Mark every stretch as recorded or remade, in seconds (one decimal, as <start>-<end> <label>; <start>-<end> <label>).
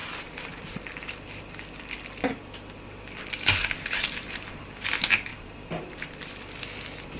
0.0-0.6 remade; 0.6-5.3 recorded; 5.3-5.9 remade; 5.9-7.2 recorded